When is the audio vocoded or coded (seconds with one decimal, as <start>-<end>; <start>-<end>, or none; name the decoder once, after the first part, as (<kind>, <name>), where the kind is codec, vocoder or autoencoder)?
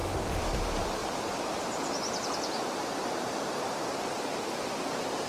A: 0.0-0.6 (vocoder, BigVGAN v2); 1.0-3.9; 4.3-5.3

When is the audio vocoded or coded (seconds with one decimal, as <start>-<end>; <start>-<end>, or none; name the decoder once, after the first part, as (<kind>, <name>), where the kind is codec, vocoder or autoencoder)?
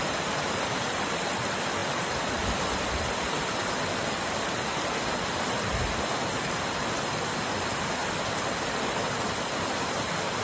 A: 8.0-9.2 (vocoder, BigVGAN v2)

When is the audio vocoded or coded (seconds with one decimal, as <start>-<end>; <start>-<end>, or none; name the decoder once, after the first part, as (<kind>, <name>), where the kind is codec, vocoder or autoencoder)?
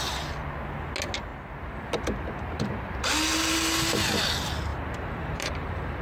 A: 4.7-6.0 (vocoder, BigVGAN v2)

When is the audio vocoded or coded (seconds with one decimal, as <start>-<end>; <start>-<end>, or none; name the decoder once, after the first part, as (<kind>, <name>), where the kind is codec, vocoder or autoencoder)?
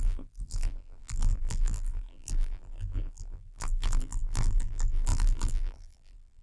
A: 0.0-6.4 (vocoder, BigVGAN v2)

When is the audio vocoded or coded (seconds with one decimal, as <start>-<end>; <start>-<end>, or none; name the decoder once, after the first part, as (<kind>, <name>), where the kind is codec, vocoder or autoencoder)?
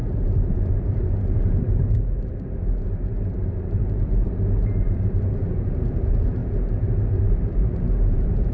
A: 0.0-8.5 (vocoder, BigVGAN v2)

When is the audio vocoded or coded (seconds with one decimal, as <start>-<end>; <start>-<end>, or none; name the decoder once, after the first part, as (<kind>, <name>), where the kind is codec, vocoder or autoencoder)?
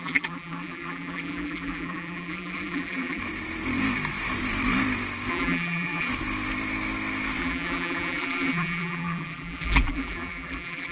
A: 0.0-3.2 (vocoder, BigVGAN v2); 5.3-6.1; 7.4-10.9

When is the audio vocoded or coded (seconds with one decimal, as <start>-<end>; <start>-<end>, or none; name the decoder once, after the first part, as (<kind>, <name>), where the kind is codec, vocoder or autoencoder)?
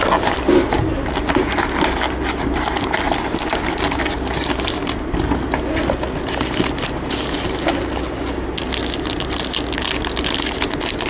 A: 3.5-5.2 (vocoder, BigVGAN v2)